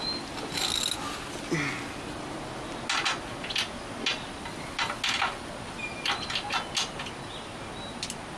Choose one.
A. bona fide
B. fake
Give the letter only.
A